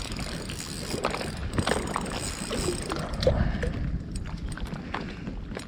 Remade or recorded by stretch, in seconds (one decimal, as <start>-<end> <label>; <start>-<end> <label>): 0.0-5.7 recorded